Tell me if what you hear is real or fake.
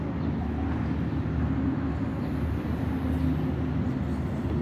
real